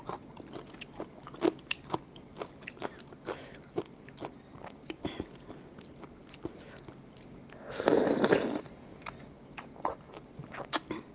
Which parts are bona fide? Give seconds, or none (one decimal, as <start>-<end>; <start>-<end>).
0.0-11.1